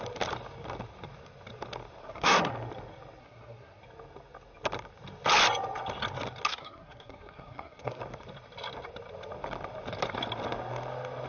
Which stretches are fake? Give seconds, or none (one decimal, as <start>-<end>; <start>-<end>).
2.0-2.5; 3.2-3.8; 6.5-8.0